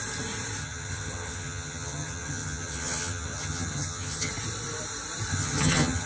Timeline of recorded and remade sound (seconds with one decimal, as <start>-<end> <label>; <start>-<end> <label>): 0.0-0.6 recorded; 0.6-4.3 remade; 4.3-5.3 recorded; 5.3-6.1 remade